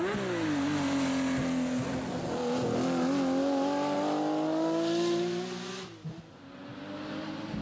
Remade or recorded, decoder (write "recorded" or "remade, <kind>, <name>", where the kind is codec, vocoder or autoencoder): recorded